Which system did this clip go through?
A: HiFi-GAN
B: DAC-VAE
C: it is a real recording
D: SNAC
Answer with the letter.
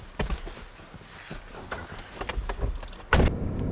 C